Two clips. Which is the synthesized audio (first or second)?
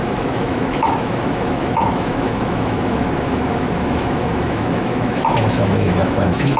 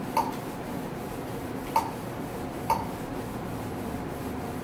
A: first